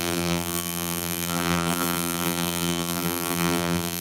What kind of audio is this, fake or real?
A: fake